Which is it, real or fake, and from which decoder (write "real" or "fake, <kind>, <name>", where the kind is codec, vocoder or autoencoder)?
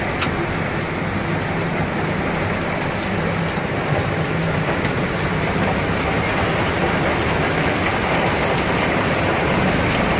real